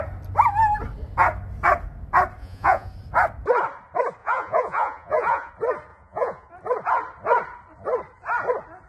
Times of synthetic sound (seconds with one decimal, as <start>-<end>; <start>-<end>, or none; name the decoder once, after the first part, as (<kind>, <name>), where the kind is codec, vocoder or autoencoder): 2.4-2.9 (vocoder, Vocos); 4.2-5.5; 5.9-6.5